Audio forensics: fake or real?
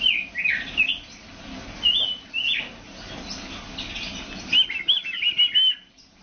real